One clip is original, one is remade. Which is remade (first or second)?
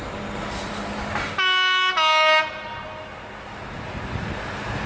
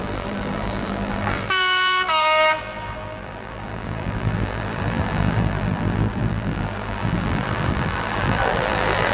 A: second